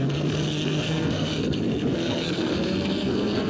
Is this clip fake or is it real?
fake